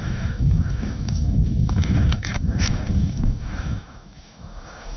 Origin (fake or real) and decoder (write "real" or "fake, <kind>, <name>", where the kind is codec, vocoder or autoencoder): fake, codec, DAC